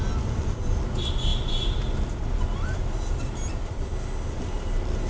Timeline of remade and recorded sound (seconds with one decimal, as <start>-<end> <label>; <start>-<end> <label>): 0.0-5.1 recorded